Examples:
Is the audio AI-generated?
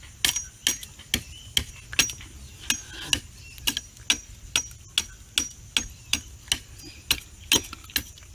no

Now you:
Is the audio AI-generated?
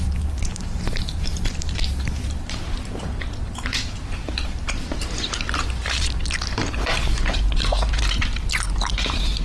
yes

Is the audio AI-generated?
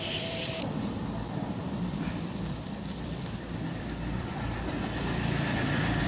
yes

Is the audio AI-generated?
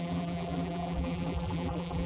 yes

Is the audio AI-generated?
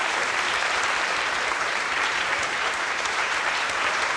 yes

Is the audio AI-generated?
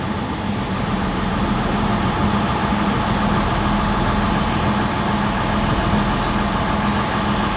no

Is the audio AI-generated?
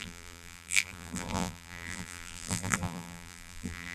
yes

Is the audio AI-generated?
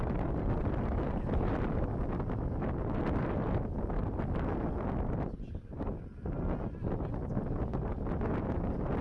no